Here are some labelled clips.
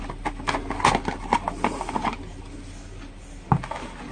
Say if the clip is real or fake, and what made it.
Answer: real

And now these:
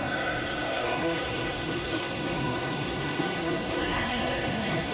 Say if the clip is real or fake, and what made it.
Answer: fake, codec, SNAC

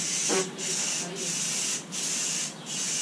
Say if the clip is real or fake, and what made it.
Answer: real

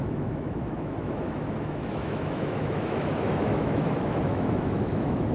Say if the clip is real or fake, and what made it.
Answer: fake, autoencoder, DAC-VAE